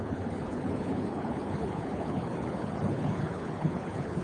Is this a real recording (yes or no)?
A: no